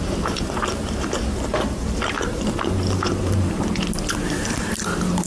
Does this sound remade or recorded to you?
remade